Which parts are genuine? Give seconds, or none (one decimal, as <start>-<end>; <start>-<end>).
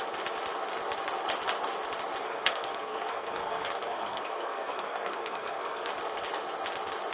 0.0-2.2; 5.9-7.1